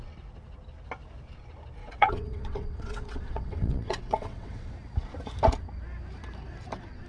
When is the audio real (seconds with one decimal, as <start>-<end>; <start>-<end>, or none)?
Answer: 0.0-1.8; 4.7-7.1